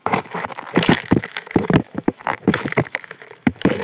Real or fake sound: fake